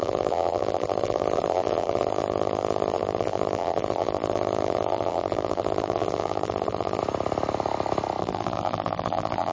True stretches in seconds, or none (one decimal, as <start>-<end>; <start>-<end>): 7.0-8.2